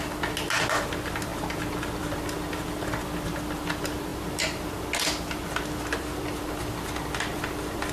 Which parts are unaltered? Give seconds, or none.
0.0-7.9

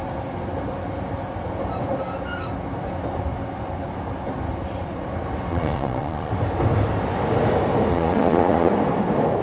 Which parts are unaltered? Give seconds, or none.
0.0-5.5; 6.3-7.9; 8.7-9.4

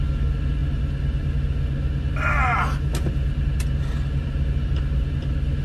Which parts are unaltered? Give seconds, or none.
0.0-5.6

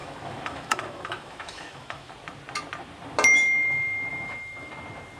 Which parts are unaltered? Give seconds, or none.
2.1-4.1; 4.7-5.2

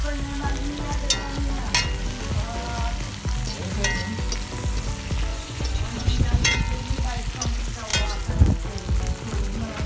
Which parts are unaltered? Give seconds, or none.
0.0-5.3; 6.6-9.9